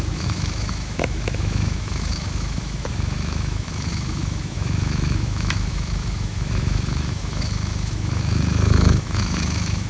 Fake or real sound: fake